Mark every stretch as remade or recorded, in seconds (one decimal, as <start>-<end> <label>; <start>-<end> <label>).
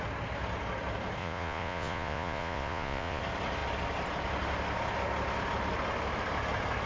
0.0-1.2 recorded; 1.2-3.2 remade; 3.2-6.9 recorded